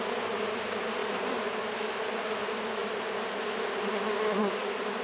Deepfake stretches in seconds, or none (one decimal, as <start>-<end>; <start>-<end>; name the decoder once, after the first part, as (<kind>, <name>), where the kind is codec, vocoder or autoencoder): 1.0-2.3 (vocoder, BigVGAN v2)